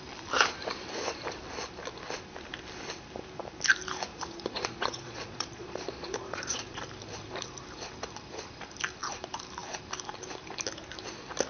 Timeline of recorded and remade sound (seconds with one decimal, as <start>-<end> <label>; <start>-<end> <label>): 0.0-4.1 recorded; 4.1-6.8 remade; 6.8-11.5 recorded